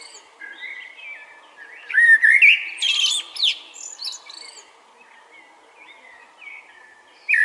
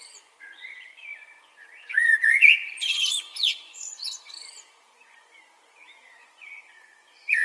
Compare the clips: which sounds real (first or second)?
first